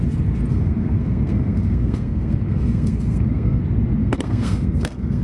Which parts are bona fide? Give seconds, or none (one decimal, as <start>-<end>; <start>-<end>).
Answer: 0.0-0.5; 3.6-4.0